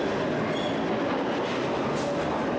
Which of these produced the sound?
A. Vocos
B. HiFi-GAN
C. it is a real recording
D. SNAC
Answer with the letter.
C